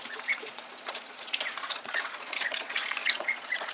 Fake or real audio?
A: fake